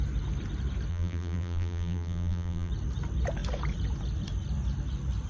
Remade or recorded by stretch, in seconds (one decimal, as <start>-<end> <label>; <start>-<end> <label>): 0.0-0.9 recorded; 0.9-2.7 remade; 2.7-5.3 recorded

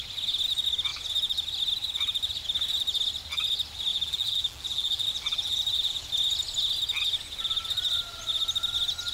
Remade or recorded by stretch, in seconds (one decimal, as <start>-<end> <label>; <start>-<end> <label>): 0.0-3.9 recorded; 3.9-6.0 remade; 6.0-9.1 recorded

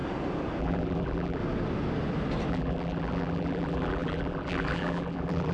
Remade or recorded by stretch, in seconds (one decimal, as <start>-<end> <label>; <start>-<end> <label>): 0.0-0.6 recorded; 0.6-1.4 remade; 1.4-2.5 recorded; 2.5-5.5 remade

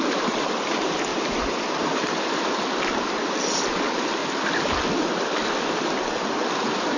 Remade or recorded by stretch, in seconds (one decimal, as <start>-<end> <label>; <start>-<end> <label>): 0.0-4.2 remade; 4.2-5.1 recorded; 5.1-7.0 remade

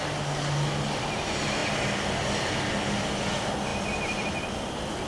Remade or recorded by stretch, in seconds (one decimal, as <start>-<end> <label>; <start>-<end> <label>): 0.0-5.1 recorded

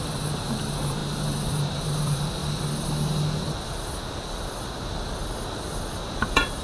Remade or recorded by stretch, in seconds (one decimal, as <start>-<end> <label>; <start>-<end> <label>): 0.0-2.4 remade; 2.4-5.9 recorded; 5.9-6.6 remade

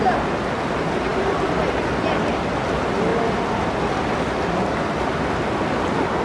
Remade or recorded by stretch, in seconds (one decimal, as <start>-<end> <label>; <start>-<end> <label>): 0.0-1.1 recorded; 1.1-1.8 remade; 1.8-6.2 recorded